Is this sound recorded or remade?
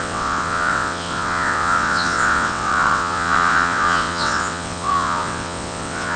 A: remade